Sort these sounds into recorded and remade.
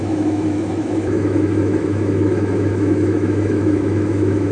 remade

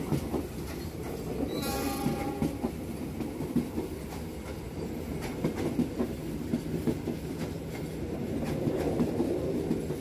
recorded